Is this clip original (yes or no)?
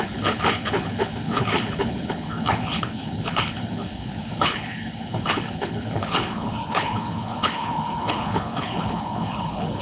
no